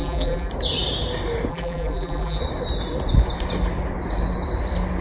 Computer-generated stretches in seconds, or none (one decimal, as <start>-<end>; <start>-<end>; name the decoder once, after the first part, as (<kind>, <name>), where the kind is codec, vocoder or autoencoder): 0.0-0.5 (vocoder, BigVGAN v2); 1.5-2.4